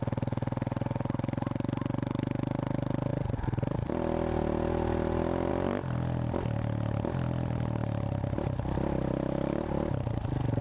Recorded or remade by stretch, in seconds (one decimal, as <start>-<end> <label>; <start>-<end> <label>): 0.0-10.6 recorded